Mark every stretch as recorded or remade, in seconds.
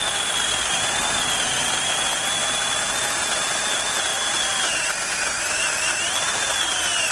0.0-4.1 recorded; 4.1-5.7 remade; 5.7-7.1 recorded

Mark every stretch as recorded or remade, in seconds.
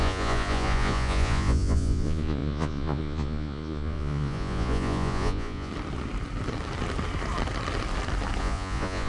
0.0-5.7 remade; 5.7-8.4 recorded; 8.4-9.1 remade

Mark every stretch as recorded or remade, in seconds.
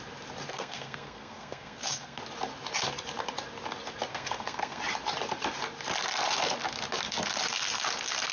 0.0-0.5 recorded; 0.5-2.2 remade; 2.2-4.1 recorded; 4.1-4.8 remade; 4.8-8.3 recorded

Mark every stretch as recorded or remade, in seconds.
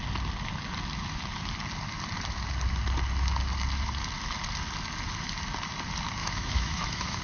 0.0-6.2 recorded; 6.2-7.2 remade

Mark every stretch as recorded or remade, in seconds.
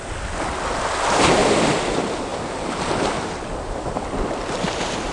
0.0-2.3 recorded; 2.3-2.9 remade; 2.9-5.1 recorded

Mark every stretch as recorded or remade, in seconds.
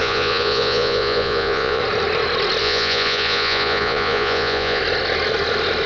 0.0-1.8 remade; 1.8-2.6 recorded; 2.6-4.8 remade; 4.8-5.9 recorded